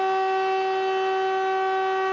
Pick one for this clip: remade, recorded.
recorded